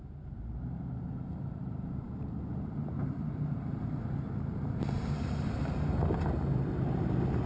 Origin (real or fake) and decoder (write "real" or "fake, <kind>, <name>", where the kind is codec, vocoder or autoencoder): fake, vocoder, BigVGAN v2